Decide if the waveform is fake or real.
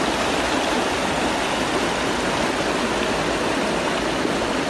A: real